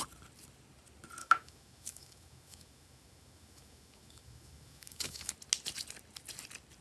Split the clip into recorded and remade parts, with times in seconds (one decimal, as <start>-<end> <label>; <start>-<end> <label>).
0.0-1.2 recorded; 1.2-5.3 remade; 5.3-6.8 recorded